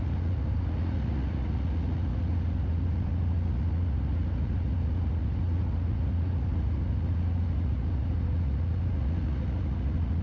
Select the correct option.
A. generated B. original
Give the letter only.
A